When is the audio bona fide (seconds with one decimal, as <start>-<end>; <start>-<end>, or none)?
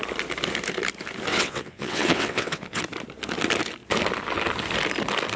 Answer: 0.0-1.3; 2.8-5.4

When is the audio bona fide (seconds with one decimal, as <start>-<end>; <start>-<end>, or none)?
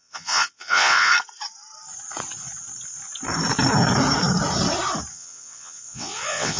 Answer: 1.1-5.1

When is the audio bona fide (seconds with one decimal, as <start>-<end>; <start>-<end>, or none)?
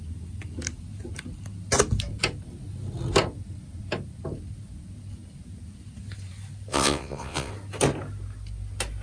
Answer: 0.0-6.7; 7.5-9.0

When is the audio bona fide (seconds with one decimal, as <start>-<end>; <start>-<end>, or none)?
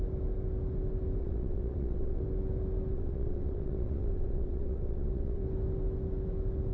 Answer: 0.0-1.2; 2.2-2.9; 5.4-6.7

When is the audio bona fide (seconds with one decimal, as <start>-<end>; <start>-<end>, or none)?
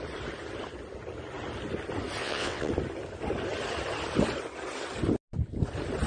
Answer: 0.0-2.2; 2.7-6.1